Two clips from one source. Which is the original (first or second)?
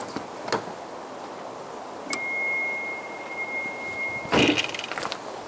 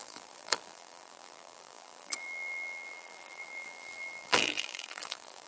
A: first